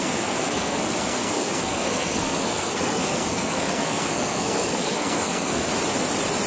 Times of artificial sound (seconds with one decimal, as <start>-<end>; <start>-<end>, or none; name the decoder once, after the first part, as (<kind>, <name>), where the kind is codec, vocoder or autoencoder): 0.0-5.7 (codec, SNAC)